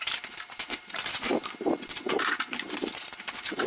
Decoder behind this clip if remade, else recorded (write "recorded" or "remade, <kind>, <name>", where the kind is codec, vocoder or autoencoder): remade, vocoder, BigVGAN v2